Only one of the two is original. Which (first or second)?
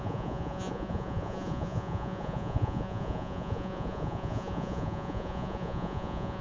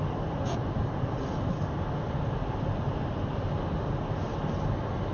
second